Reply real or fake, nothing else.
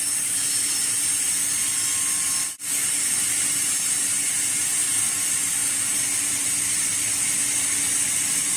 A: real